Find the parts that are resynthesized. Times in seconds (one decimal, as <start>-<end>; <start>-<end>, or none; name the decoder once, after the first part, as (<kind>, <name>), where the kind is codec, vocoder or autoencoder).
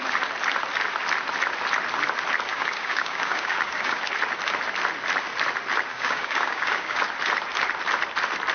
2.5-4.0 (codec, DAC); 5.9-7.0